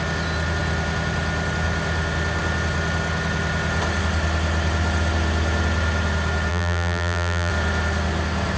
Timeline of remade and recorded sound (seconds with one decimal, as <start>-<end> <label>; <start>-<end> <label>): 0.0-6.5 recorded; 6.5-7.5 remade; 7.5-8.6 recorded